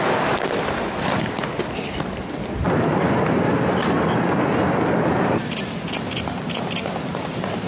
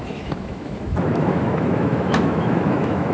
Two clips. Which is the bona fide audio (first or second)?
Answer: first